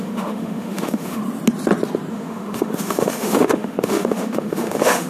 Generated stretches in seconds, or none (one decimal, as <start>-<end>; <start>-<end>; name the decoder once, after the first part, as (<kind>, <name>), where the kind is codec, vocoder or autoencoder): 0.0-1.2 (autoencoder, DAC-VAE); 2.1-5.1